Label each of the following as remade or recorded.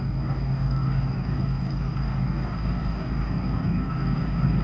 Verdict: remade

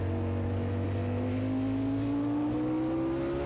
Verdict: recorded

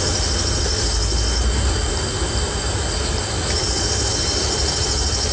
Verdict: recorded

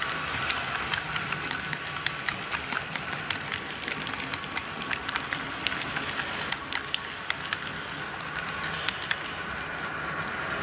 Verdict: recorded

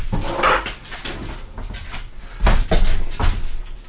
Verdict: recorded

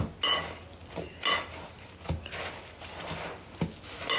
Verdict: recorded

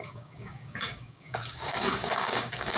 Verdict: remade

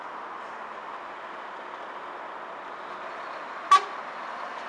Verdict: recorded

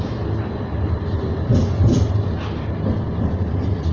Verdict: recorded